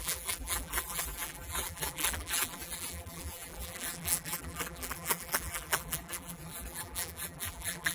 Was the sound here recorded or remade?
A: remade